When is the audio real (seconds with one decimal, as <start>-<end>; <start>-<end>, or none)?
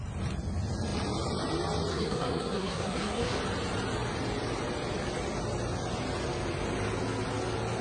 0.0-1.9; 3.4-7.8